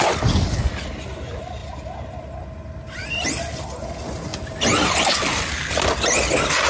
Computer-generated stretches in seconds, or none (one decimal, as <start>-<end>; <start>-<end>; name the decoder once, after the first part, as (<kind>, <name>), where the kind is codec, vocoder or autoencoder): none